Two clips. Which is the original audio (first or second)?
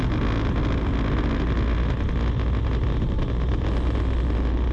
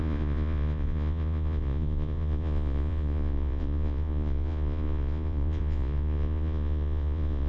first